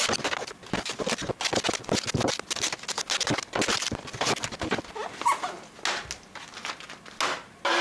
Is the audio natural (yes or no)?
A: yes